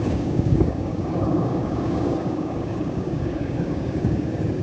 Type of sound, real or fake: fake